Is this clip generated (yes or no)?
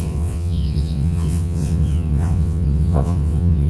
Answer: yes